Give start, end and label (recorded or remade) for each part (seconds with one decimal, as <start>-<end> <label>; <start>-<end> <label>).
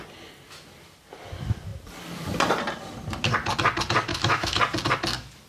0.0-4.1 recorded; 4.1-4.6 remade; 4.6-5.5 recorded